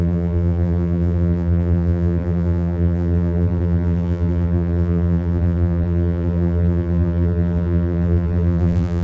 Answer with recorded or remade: remade